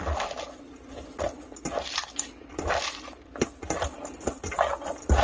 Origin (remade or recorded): recorded